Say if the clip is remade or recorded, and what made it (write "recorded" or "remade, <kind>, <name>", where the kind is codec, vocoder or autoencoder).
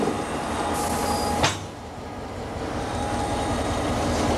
recorded